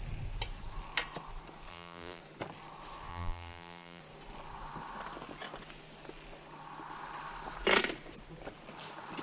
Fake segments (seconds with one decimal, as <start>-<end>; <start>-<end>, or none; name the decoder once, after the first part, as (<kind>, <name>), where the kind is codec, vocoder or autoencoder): 1.7-2.2 (vocoder, BigVGAN v2); 3.1-4.0